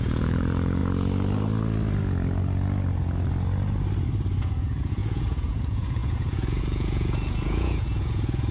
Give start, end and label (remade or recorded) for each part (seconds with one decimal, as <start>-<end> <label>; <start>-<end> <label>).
0.0-0.8 remade; 0.8-4.4 recorded; 4.4-8.5 remade